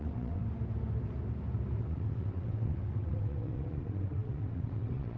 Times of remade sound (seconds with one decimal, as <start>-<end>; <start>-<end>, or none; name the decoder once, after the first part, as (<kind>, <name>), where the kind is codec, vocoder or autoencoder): 0.0-0.4 (vocoder, WaveNeXt); 1.8-5.2

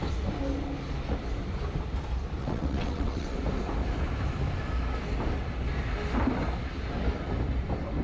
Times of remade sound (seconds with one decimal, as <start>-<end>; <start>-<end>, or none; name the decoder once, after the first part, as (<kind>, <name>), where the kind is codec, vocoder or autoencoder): 2.4-3.4 (vocoder, WaveNeXt)

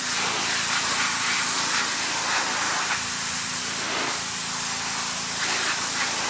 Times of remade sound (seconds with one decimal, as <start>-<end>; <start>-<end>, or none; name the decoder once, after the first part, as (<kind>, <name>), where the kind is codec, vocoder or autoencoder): none

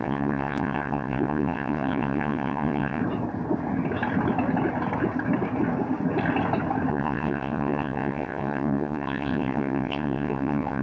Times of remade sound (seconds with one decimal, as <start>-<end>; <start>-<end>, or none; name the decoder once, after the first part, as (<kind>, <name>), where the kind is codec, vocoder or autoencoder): 0.0-3.0 (vocoder, WaveNeXt); 6.9-10.8

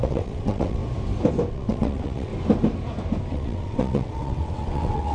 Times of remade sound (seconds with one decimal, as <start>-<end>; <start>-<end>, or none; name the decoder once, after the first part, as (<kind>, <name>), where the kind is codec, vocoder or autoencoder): 0.0-0.8 (vocoder, WaveNeXt); 1.5-2.3; 3.3-5.1

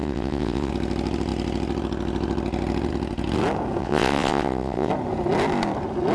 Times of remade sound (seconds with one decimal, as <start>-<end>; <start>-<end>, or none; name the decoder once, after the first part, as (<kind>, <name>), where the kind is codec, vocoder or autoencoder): 0.0-0.7 (vocoder, WaveNeXt); 3.8-4.9

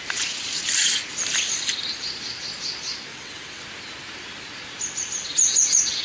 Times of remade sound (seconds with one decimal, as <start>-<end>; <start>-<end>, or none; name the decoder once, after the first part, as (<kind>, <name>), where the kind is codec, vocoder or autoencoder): 3.1-3.6 (vocoder, WaveNeXt)

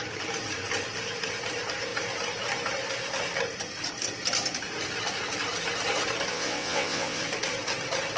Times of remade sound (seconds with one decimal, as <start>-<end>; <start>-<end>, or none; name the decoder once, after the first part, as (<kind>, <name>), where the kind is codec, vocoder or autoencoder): 6.3-7.2 (vocoder, WaveNeXt)